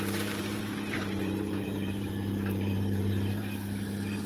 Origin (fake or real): fake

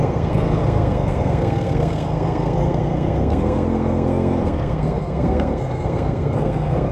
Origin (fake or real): fake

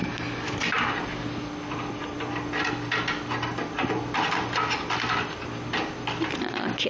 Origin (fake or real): real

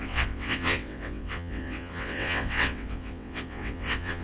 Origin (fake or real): fake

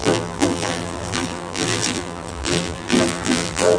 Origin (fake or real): fake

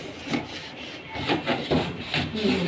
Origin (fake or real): real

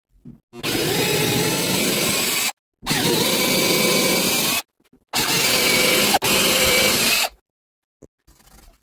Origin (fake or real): real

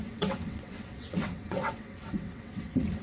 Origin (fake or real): fake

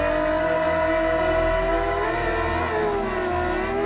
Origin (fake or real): real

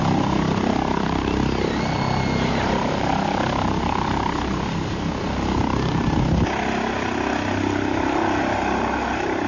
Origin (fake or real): real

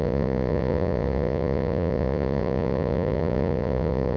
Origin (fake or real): fake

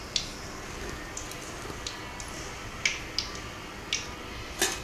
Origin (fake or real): real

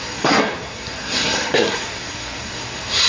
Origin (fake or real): fake